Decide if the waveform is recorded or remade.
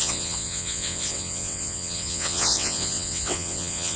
remade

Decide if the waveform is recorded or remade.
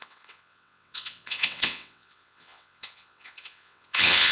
remade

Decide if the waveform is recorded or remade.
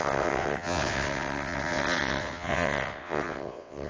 remade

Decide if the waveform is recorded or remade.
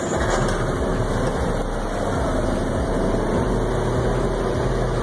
recorded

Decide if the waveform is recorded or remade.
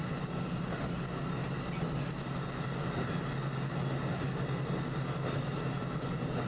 recorded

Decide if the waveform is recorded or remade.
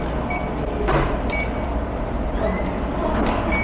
recorded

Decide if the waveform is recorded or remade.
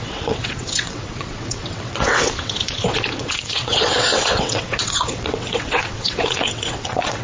remade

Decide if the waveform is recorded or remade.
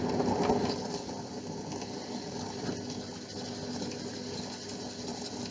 recorded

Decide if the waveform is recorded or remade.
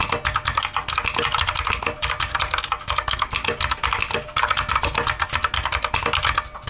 recorded